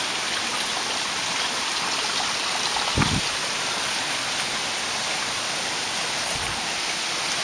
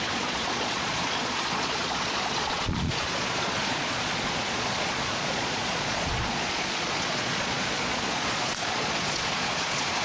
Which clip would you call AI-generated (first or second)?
second